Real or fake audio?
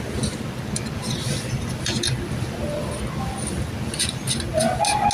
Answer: real